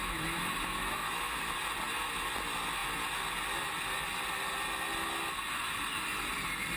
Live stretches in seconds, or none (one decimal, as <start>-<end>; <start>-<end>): 1.4-6.8